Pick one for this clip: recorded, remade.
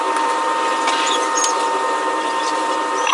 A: recorded